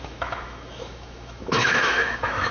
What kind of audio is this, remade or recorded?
remade